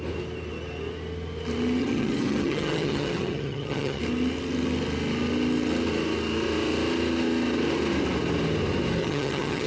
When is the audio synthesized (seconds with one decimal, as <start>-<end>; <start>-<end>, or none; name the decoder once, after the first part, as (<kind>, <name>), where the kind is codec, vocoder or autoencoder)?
1.8-4.0 (vocoder, HiFi-GAN); 9.0-9.7

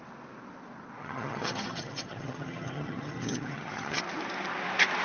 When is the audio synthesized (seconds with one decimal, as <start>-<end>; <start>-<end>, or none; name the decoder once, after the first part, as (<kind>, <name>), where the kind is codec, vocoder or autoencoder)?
1.0-4.0 (vocoder, HiFi-GAN)

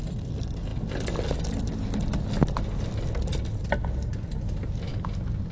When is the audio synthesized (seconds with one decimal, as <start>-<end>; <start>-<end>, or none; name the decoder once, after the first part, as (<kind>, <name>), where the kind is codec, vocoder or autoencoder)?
none